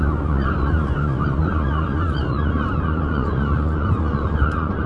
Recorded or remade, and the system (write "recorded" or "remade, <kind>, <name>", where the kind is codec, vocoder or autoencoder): remade, vocoder, Vocos